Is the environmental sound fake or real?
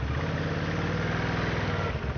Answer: real